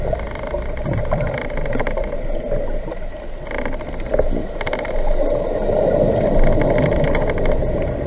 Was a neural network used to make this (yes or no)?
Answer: no